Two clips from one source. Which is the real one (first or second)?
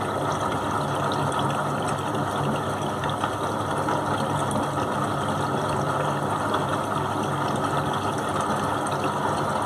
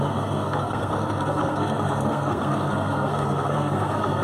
first